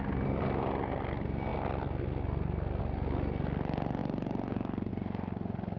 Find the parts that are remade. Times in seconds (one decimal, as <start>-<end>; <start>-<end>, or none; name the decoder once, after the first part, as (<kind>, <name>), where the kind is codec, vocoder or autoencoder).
none